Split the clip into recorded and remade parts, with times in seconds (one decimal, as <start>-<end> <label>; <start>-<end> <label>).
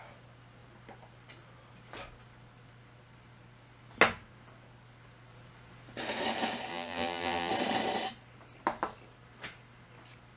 0.0-6.7 recorded; 6.7-7.5 remade; 7.5-10.4 recorded